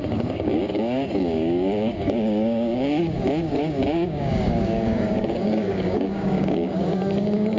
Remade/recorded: remade